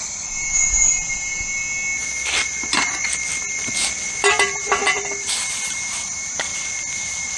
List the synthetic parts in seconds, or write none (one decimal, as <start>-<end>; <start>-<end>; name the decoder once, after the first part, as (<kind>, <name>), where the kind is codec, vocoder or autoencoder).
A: 0.0-1.3 (vocoder, BigVGAN v2); 4.3-6.5; 7.0-7.4